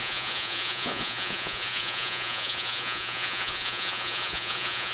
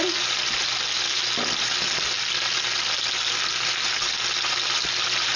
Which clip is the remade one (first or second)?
first